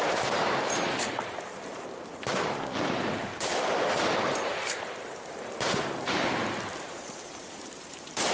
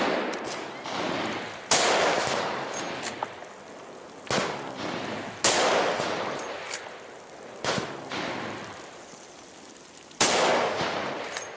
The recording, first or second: second